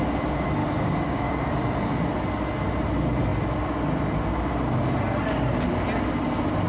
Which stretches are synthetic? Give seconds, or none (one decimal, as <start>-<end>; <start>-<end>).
0.6-1.3